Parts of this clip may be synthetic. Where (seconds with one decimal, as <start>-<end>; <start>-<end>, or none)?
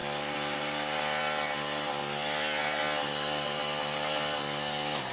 none